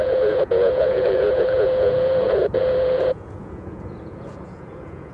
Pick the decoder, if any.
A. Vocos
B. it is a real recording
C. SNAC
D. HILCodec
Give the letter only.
A